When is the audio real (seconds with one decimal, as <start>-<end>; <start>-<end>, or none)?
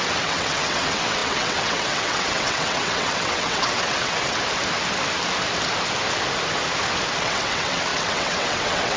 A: 4.4-7.2